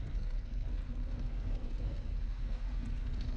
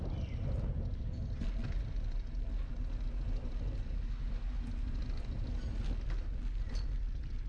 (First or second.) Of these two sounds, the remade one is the first